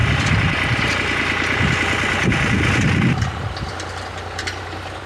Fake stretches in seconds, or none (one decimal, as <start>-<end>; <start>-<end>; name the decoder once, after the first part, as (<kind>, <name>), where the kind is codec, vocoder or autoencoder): none